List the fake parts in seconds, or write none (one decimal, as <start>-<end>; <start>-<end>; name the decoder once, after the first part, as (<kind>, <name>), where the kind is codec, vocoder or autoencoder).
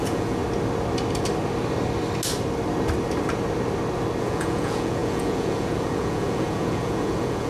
0.0-0.4 (vocoder, Vocos); 4.2-7.5